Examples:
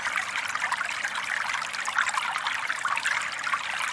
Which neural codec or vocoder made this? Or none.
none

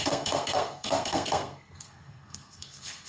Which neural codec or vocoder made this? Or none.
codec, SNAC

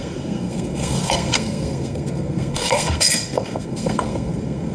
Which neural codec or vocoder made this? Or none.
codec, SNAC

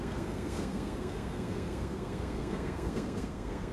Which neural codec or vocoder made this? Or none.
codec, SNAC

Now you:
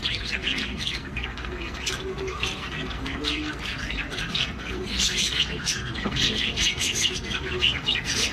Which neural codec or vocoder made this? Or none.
codec, SNAC